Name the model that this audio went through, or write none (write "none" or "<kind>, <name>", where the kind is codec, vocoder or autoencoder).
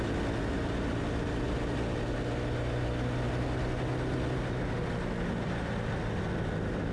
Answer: none